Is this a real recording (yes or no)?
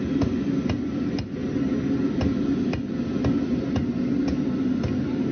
yes